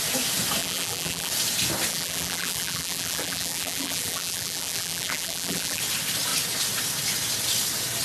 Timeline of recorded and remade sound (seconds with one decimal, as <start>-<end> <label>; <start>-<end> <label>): 0.0-0.6 recorded; 0.6-1.3 remade; 1.3-1.9 recorded; 1.9-5.8 remade; 5.8-8.0 recorded